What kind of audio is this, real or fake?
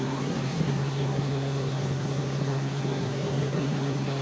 fake